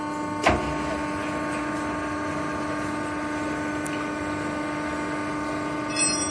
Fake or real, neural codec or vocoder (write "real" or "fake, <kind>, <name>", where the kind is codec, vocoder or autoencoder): real